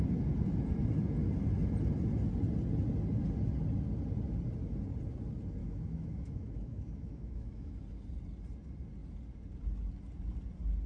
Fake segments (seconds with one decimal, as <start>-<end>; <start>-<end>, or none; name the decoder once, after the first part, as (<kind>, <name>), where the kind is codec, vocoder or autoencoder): 5.6-7.8 (autoencoder, DAC-VAE)